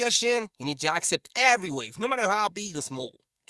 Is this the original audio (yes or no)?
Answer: no